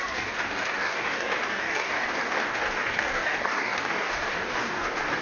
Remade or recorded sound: remade